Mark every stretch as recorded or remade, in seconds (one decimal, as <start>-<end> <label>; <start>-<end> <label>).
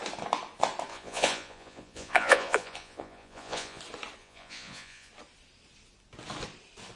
0.0-0.9 recorded; 0.9-3.8 remade; 3.8-4.2 recorded; 4.2-5.1 remade; 5.1-7.0 recorded